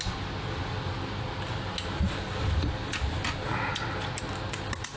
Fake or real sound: real